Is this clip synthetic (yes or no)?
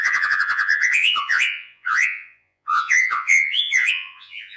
yes